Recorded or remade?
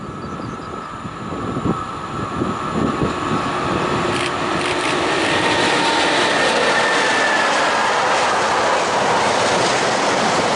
recorded